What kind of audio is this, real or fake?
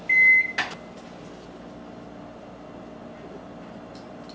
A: real